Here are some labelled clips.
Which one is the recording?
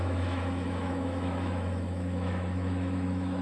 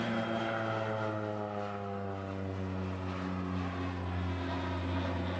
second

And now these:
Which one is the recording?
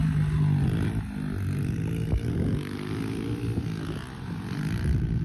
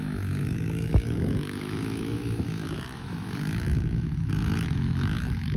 first